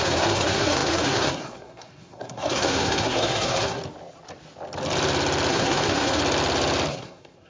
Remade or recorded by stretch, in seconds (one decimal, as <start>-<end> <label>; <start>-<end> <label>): 0.0-3.8 remade; 3.8-5.5 recorded; 5.5-6.2 remade; 6.2-6.9 recorded; 6.9-7.5 remade